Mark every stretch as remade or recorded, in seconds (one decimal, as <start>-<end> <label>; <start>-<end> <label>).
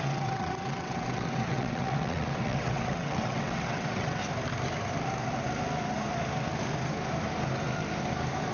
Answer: 0.0-4.2 remade; 4.2-8.5 recorded